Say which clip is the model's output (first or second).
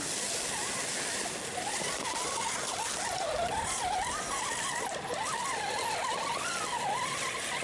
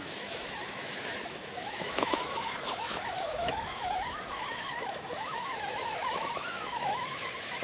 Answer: second